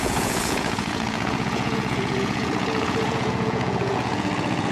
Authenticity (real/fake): fake